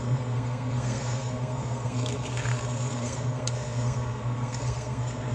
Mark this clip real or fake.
fake